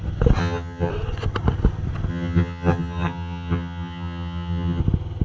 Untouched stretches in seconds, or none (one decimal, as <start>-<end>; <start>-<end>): 0.0-0.4; 0.9-2.1; 4.8-5.2